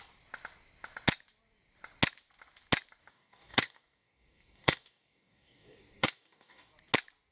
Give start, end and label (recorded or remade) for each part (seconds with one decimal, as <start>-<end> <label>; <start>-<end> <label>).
0.0-3.0 recorded; 3.0-6.7 remade; 6.7-7.3 recorded